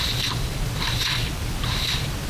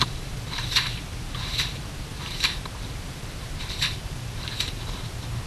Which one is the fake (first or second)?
second